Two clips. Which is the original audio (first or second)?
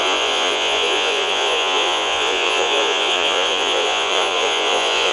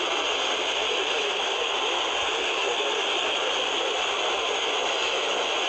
second